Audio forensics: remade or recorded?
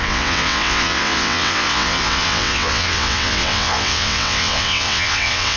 remade